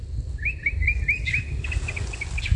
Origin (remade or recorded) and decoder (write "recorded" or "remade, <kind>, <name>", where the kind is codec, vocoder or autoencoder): recorded